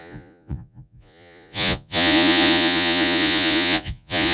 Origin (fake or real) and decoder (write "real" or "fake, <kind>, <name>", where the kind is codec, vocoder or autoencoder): fake, vocoder, Vocos